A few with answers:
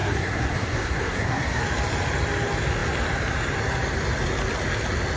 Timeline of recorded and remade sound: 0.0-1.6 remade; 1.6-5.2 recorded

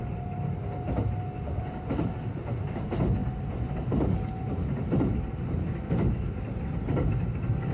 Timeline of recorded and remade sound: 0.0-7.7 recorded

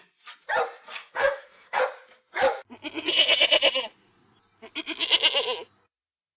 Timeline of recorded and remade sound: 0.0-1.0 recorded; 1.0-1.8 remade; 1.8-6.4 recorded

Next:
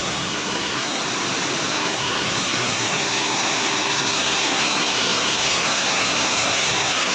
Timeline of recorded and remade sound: 0.0-1.0 remade; 1.0-1.7 recorded; 1.7-7.1 remade

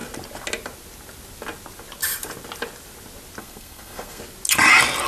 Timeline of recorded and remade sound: 0.0-3.4 recorded; 3.4-4.2 remade; 4.2-5.1 recorded

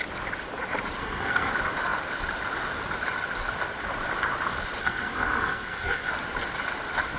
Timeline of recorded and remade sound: 0.0-1.0 recorded; 1.0-1.5 remade; 1.5-4.8 recorded; 4.8-6.1 remade; 6.1-7.2 recorded